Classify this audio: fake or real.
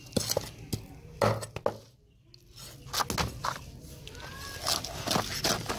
real